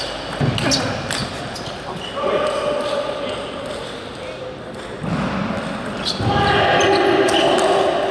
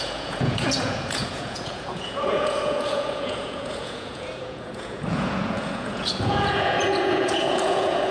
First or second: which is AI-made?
second